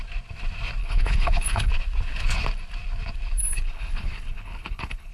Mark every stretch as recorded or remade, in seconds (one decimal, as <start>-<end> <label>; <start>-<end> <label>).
0.0-0.8 recorded; 0.8-1.7 remade; 1.7-3.5 recorded; 3.5-5.1 remade